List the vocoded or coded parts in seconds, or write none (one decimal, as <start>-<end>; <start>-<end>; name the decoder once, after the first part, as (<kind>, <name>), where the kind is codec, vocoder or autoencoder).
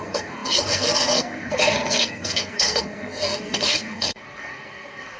0.0-5.2 (codec, SNAC)